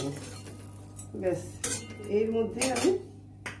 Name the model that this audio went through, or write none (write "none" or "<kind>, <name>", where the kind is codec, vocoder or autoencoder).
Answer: none